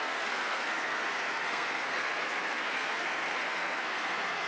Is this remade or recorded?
remade